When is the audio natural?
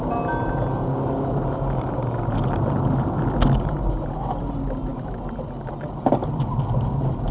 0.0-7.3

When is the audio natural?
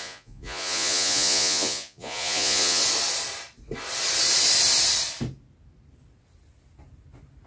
2.8-7.5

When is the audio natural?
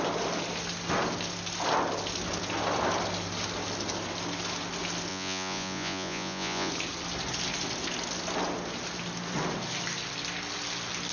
0.0-5.1; 6.7-11.1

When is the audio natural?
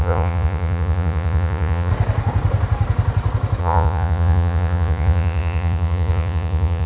1.9-3.6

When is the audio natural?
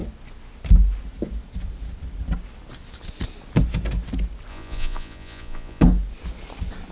0.0-4.5; 5.8-6.9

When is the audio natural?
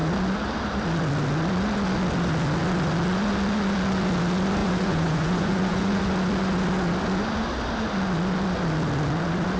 0.0-4.6; 6.0-9.6